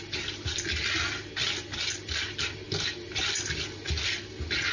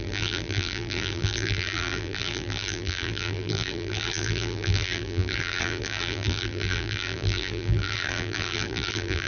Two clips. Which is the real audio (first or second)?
first